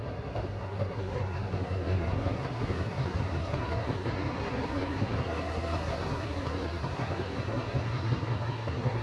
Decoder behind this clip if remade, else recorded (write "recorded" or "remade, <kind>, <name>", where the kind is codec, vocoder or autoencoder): remade, codec, SNAC